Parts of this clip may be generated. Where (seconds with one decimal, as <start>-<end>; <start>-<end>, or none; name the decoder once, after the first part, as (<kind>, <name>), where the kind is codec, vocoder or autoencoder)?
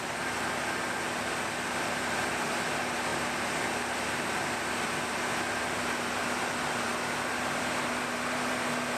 none